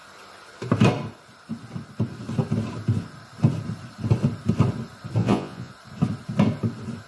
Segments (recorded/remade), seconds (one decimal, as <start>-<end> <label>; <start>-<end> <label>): 0.0-5.2 recorded; 5.2-5.7 remade; 5.7-7.1 recorded